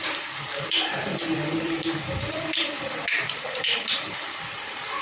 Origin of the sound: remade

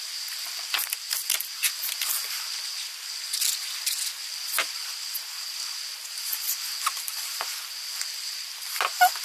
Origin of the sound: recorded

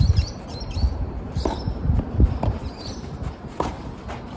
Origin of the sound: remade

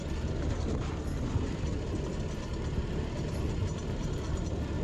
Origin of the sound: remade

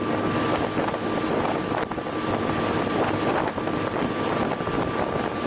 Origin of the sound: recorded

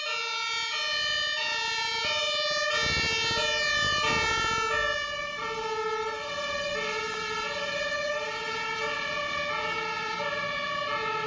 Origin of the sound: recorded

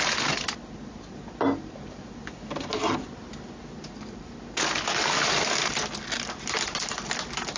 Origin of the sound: recorded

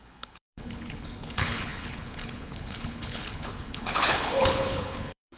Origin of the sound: remade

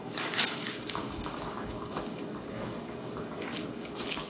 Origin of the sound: remade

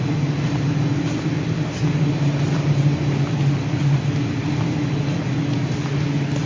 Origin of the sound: recorded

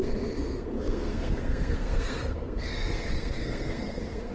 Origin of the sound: remade